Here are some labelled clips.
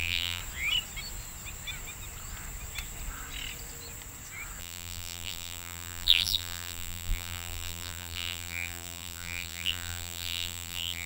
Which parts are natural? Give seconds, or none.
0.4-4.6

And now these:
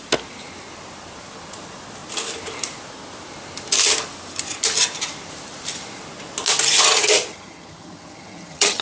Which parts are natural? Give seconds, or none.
0.0-7.3

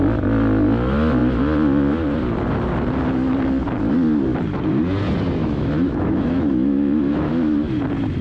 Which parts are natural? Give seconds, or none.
0.0-5.4; 7.3-8.2

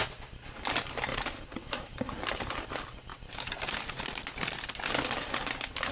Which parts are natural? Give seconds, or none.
0.0-1.1; 2.6-3.1; 4.2-5.9

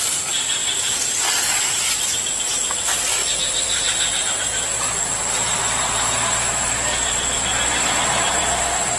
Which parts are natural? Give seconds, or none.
0.6-2.5; 3.2-6.6; 7.5-9.0

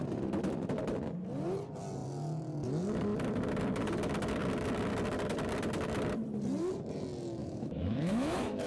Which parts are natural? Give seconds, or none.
0.0-7.4